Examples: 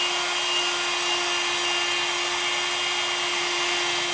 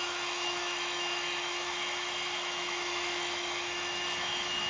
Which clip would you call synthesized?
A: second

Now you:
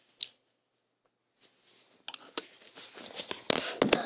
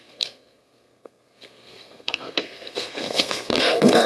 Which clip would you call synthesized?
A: second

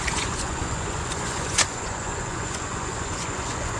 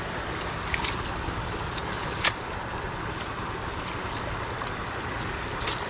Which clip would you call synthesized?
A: first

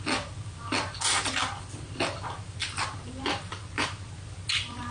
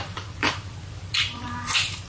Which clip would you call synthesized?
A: second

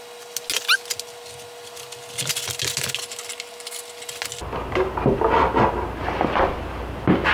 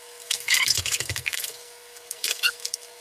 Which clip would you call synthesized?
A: second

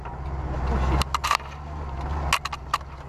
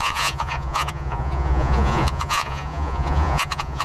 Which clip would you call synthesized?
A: second